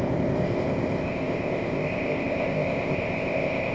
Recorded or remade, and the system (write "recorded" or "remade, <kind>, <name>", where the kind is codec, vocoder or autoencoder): remade, codec, ZipCodec